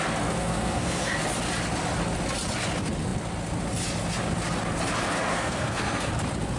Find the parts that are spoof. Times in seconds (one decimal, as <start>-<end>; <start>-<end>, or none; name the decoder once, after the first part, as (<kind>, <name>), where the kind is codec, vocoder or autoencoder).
0.4-1.2 (codec, SNAC); 5.3-6.1